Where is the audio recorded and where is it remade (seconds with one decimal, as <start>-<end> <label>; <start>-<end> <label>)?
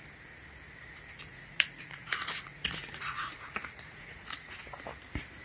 0.0-1.3 recorded; 1.3-4.5 remade; 4.5-5.4 recorded